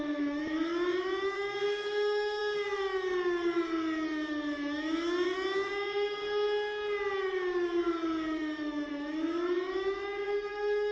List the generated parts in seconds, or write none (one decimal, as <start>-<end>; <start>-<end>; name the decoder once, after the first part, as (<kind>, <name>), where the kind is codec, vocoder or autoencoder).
0.0-6.2 (autoencoder, DAC-VAE); 7.2-10.9